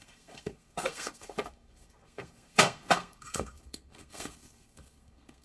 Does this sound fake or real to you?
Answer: fake